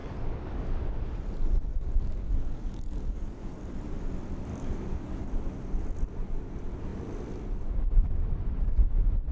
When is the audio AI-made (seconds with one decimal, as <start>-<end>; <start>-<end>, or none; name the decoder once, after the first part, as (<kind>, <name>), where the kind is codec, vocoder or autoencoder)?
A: 0.0-0.9 (codec, DAC); 1.7-3.6; 4.5-5.2